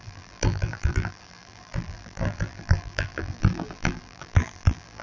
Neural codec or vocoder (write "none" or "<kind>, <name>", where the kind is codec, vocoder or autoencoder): vocoder, BigVGAN v2